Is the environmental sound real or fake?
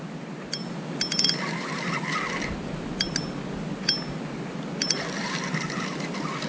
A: real